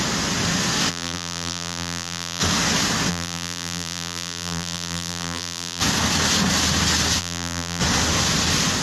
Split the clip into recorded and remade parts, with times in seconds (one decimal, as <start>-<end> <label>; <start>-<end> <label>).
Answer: 0.0-0.9 recorded; 0.9-2.4 remade; 2.4-3.1 recorded; 3.1-5.8 remade; 5.8-7.2 recorded; 7.2-7.8 remade; 7.8-8.8 recorded